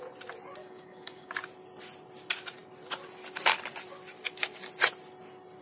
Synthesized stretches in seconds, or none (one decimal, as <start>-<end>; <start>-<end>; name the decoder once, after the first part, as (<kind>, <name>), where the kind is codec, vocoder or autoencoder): 0.6-1.3 (codec, DAC)

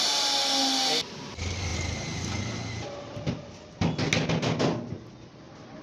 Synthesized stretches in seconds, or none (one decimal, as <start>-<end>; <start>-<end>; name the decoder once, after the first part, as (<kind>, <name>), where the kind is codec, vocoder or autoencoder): none

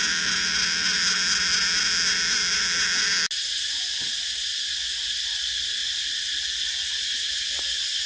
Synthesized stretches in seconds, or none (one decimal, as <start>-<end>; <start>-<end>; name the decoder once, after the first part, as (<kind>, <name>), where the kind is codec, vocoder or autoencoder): none

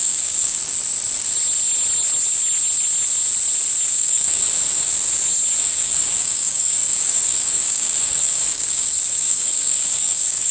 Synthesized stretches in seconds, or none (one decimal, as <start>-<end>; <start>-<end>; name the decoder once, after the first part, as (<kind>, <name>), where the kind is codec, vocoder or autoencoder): 0.0-0.6 (codec, DAC); 3.9-4.9; 5.6-10.5

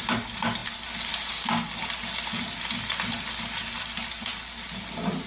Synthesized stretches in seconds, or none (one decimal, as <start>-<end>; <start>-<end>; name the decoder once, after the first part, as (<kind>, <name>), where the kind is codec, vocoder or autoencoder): none

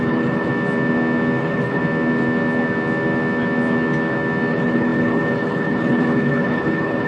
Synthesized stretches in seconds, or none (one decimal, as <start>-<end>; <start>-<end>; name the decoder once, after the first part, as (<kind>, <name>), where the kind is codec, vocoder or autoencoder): 0.0-0.5 (codec, HILCodec); 1.4-1.8; 4.5-7.1